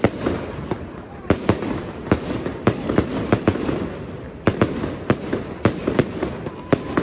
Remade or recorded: recorded